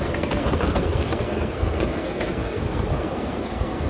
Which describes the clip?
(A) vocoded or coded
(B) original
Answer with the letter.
A